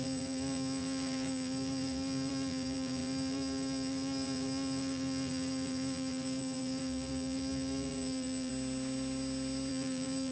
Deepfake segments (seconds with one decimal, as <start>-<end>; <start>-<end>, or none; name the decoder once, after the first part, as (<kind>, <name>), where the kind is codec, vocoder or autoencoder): 0.0-8.5 (vocoder, BigVGAN v2); 9.7-10.3